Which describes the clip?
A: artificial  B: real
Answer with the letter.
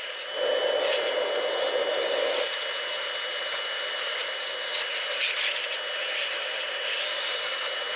B